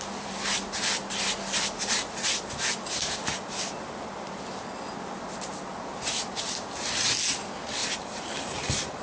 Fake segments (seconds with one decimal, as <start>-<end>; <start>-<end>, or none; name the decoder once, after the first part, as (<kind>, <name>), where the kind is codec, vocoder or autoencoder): 7.8-9.0 (vocoder, BigVGAN v2)